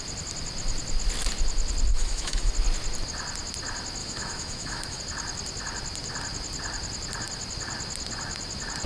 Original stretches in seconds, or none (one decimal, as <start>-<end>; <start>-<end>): 0.0-1.9; 2.5-4.0; 5.0-8.9